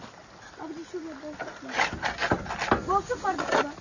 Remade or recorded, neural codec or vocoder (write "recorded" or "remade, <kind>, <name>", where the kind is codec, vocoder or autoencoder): recorded